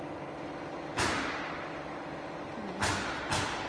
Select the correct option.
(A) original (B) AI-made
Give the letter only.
A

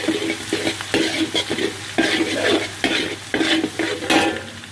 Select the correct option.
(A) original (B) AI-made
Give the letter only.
A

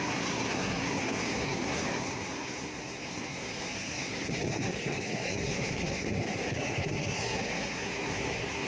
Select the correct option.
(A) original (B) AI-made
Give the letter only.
B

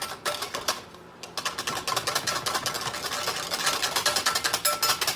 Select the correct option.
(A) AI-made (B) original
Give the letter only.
B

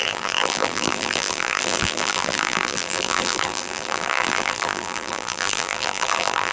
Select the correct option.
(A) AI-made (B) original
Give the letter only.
A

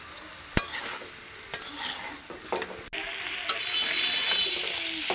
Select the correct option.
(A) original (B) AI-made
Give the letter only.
A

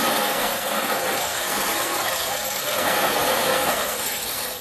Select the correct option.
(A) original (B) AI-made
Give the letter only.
B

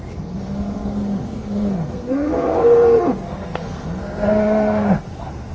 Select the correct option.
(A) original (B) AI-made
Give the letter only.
B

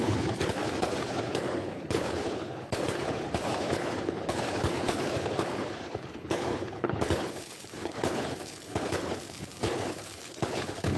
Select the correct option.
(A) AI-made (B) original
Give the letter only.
A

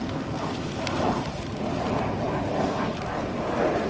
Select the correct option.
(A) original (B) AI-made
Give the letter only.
A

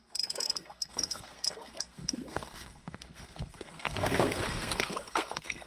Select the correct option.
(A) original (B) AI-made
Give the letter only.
B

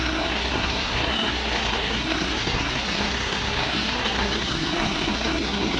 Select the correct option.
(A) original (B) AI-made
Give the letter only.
B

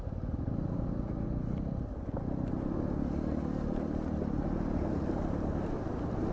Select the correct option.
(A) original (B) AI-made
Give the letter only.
A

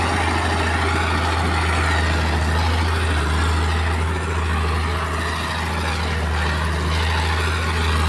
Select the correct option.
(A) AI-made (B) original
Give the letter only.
B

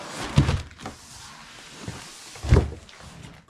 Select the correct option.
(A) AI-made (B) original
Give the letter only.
B